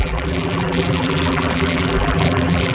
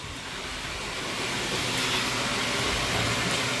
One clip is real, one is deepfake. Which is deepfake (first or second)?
first